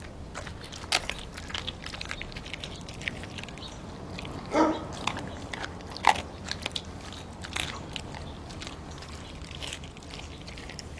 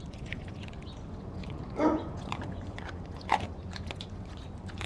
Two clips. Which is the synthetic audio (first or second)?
second